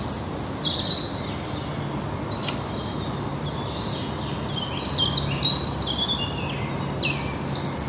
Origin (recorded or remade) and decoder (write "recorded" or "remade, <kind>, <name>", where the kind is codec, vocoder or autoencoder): recorded